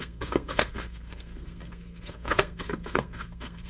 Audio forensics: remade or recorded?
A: remade